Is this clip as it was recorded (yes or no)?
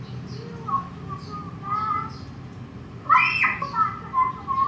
yes